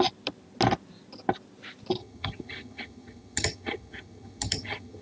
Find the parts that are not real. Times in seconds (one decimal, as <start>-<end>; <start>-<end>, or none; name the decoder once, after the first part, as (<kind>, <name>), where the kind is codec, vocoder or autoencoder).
2.0-5.0 (vocoder, HiFi-GAN)